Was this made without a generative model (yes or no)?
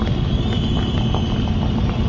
yes